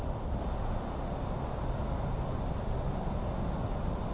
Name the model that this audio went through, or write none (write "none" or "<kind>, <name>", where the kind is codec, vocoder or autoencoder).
none